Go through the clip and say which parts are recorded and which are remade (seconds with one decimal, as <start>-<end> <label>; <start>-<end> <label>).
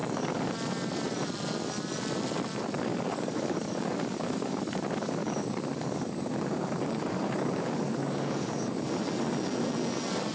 0.0-0.5 remade; 0.5-2.9 recorded; 2.9-4.6 remade; 4.6-5.2 recorded; 5.2-8.8 remade; 8.8-10.3 recorded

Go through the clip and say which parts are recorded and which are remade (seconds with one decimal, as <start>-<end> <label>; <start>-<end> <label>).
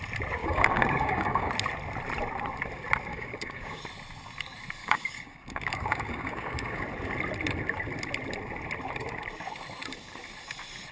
0.0-0.4 recorded; 0.4-1.5 remade; 1.5-3.1 recorded; 3.1-3.8 remade; 3.8-4.8 recorded; 4.8-6.8 remade; 6.8-10.9 recorded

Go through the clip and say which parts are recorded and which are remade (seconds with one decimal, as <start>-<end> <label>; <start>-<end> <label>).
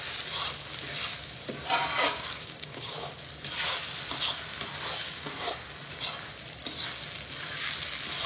0.0-2.0 recorded; 2.0-3.1 remade; 3.1-4.9 recorded; 4.9-5.6 remade; 5.6-8.3 recorded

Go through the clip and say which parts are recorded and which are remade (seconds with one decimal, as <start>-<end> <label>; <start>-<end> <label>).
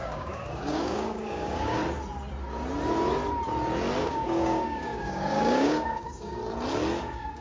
0.0-1.8 remade; 1.8-4.0 recorded; 4.0-6.4 remade; 6.4-7.0 recorded; 7.0-7.4 remade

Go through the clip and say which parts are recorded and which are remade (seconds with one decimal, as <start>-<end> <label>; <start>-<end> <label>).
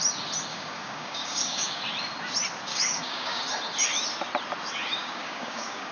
0.0-0.5 recorded; 0.5-1.8 remade; 1.8-2.7 recorded; 2.7-3.4 remade; 3.4-5.0 recorded; 5.0-5.9 remade